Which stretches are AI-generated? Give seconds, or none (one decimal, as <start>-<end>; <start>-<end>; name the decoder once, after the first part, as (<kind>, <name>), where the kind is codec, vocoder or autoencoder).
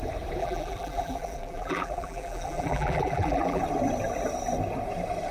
0.4-3.6 (vocoder, BigVGAN v2)